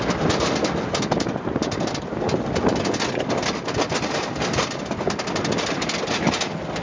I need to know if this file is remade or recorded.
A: recorded